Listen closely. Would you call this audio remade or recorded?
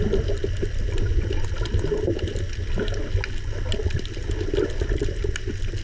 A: recorded